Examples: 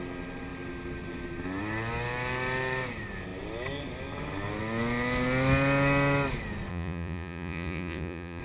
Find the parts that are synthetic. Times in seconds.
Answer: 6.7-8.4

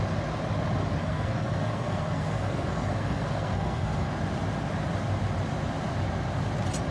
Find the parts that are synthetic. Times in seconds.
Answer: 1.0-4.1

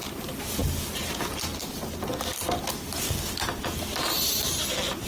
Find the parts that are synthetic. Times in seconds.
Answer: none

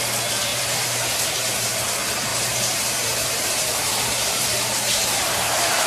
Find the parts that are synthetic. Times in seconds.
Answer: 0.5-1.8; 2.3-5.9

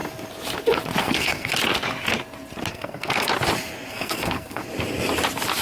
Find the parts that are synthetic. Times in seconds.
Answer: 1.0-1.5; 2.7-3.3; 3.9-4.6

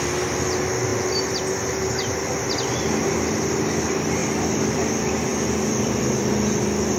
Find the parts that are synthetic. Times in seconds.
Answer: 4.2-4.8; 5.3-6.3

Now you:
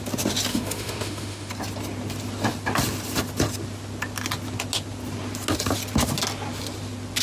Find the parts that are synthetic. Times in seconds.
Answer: 0.5-1.5